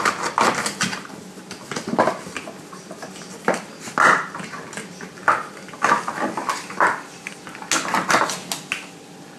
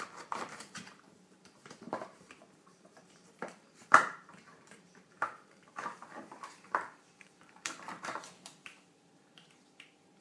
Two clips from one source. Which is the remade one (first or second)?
second